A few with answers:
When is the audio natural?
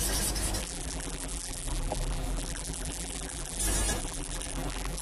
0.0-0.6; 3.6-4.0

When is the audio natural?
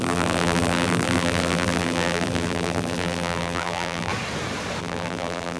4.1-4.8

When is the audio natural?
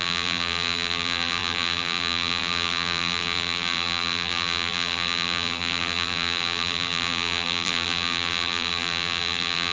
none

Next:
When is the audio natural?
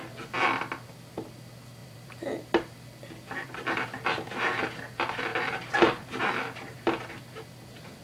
0.0-1.8; 4.4-5.3; 7.1-8.0